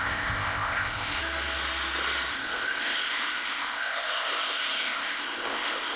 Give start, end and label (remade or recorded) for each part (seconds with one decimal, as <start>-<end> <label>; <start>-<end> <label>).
0.0-1.2 remade; 1.2-2.3 recorded; 2.3-6.0 remade